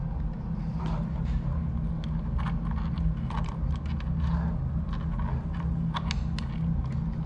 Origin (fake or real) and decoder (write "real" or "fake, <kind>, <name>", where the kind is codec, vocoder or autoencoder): real